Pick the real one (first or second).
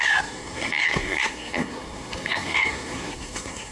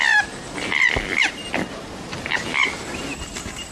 second